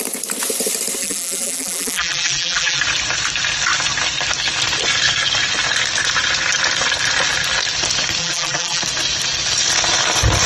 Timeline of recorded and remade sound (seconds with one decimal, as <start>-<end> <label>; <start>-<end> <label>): 0.0-1.0 recorded; 1.0-2.8 remade; 2.8-8.2 recorded; 8.2-8.8 remade; 8.8-10.5 recorded